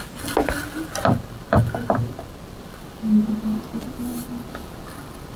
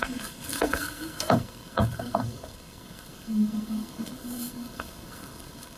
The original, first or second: first